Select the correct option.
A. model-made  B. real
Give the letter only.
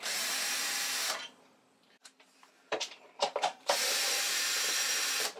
A